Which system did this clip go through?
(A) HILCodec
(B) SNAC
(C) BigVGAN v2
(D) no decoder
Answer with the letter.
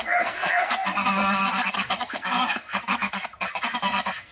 B